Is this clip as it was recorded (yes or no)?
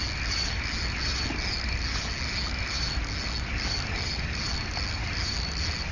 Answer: yes